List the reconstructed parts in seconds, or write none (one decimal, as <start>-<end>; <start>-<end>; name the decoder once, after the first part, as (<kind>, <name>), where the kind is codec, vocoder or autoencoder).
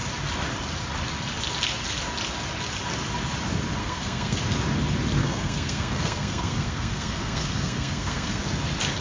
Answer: 3.8-4.4 (codec, SNAC); 5.2-8.4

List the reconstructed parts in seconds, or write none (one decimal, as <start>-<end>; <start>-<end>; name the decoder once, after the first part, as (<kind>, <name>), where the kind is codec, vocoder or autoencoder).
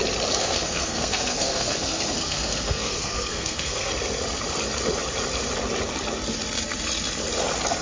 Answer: 0.4-3.9 (codec, SNAC)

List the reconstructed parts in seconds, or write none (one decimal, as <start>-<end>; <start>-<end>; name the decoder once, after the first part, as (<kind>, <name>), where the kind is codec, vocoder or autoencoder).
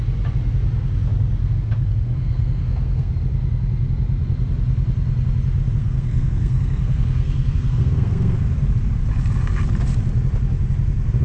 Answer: 1.4-3.1 (codec, SNAC); 5.8-8.4